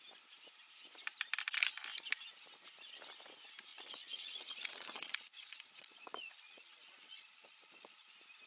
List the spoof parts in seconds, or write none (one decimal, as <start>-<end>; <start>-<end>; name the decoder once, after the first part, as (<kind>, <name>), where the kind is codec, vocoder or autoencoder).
3.7-8.1 (vocoder, Vocos)